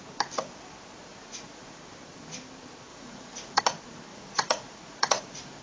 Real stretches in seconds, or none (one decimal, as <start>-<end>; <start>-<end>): 0.0-1.1; 1.8-2.9; 3.6-4.1